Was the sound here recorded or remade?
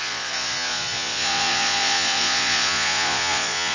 remade